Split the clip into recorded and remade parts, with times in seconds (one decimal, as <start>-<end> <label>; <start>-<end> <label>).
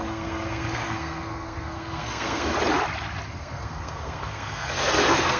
0.0-2.5 remade; 2.5-3.3 recorded; 3.3-5.4 remade